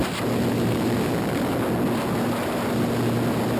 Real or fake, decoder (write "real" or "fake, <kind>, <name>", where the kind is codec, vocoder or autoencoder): real